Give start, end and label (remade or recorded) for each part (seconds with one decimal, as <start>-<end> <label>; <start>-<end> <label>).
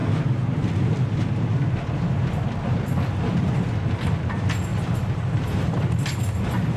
0.0-6.8 recorded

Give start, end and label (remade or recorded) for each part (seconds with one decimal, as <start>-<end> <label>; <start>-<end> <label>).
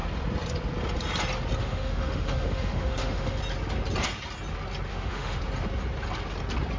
0.0-1.6 recorded; 1.6-3.4 remade; 3.4-4.9 recorded; 4.9-5.4 remade; 5.4-6.8 recorded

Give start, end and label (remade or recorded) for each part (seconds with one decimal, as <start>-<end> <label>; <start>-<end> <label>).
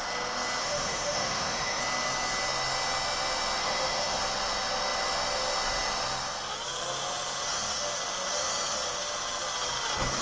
0.0-0.6 recorded; 0.6-1.8 remade; 1.8-3.6 recorded; 3.6-4.2 remade; 4.2-10.2 recorded